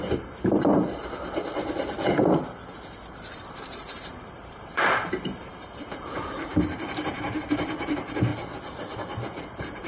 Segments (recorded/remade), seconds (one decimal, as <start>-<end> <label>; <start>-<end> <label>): 0.0-0.7 remade; 0.7-3.5 recorded; 3.5-6.4 remade; 6.4-7.0 recorded; 7.0-8.3 remade; 8.3-9.4 recorded; 9.4-9.9 remade